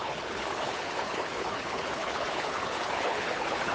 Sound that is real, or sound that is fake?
fake